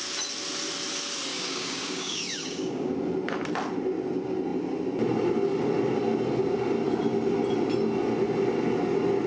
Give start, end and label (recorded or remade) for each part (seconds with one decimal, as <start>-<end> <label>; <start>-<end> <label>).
0.0-1.3 recorded; 1.3-2.9 remade; 2.9-9.3 recorded